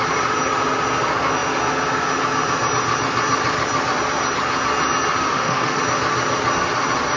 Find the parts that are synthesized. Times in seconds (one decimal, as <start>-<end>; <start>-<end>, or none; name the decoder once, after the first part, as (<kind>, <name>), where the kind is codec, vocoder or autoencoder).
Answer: 5.2-5.8 (autoencoder, DAC-VAE)